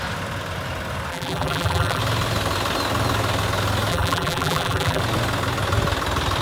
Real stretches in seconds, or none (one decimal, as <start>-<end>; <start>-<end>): 0.0-1.1; 2.0-3.9; 5.0-6.4